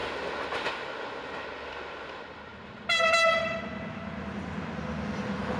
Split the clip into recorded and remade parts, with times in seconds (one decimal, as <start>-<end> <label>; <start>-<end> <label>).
0.0-5.6 recorded